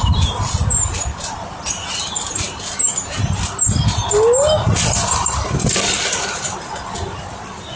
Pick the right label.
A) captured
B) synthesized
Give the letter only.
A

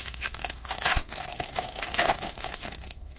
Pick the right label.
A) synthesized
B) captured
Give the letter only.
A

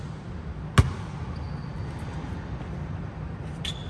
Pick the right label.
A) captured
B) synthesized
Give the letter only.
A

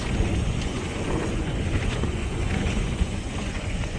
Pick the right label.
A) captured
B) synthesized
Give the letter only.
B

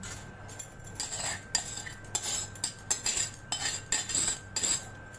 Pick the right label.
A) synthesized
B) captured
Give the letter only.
B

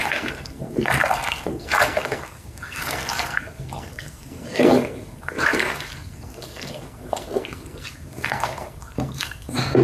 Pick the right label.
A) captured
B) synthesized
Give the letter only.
B